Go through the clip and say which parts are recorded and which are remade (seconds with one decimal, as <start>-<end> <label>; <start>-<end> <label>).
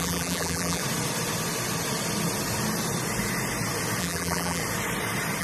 0.0-0.8 remade; 0.8-4.0 recorded; 4.0-4.6 remade; 4.6-5.4 recorded